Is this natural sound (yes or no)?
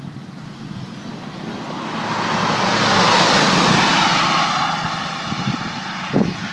yes